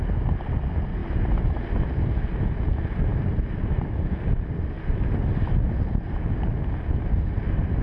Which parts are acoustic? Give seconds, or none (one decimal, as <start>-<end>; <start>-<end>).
0.0-1.0; 1.7-3.1; 4.6-7.8